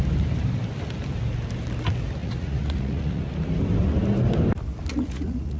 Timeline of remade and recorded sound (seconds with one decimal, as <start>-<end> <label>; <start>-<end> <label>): 0.0-2.2 recorded; 2.2-3.2 remade; 3.2-4.9 recorded; 4.9-5.6 remade